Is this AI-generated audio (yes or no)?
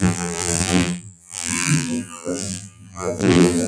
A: yes